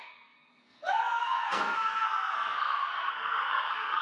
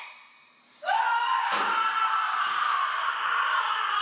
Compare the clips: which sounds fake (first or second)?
first